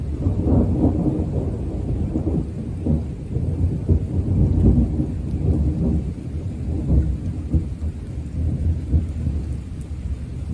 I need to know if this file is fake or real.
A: real